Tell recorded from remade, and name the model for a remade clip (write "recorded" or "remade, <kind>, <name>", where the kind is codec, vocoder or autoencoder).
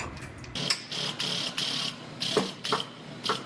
recorded